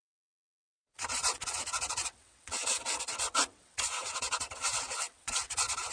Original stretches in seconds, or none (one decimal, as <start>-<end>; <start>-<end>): none

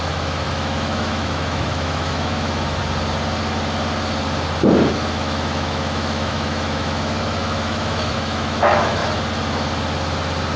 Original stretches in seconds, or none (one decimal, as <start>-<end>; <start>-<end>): 2.8-4.9; 9.0-10.6